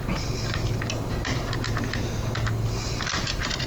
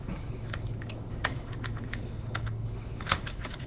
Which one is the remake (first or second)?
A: second